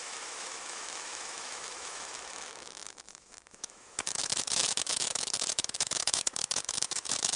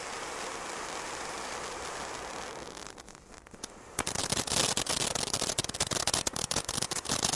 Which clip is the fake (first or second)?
first